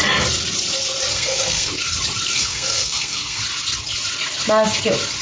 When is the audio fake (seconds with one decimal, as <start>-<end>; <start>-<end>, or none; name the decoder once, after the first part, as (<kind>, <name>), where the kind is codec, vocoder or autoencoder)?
1.1-1.7 (codec, SNAC); 2.3-3.4